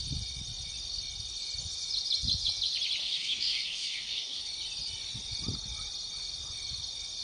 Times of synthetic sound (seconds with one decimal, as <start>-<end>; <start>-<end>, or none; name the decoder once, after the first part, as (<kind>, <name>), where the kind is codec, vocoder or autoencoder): 3.0-4.4 (codec, DAC)